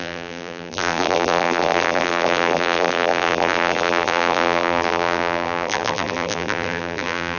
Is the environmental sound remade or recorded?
remade